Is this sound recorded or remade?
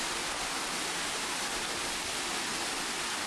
recorded